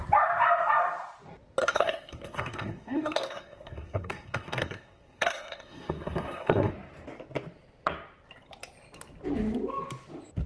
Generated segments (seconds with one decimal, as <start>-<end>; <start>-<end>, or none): 1.6-6.7